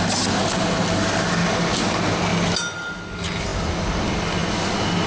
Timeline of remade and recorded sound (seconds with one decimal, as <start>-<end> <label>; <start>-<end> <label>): 0.0-5.1 recorded